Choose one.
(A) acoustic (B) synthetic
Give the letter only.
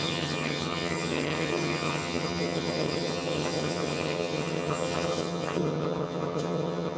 B